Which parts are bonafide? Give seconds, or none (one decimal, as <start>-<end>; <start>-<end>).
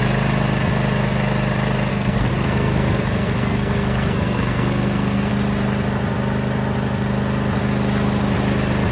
0.0-1.9; 5.3-8.9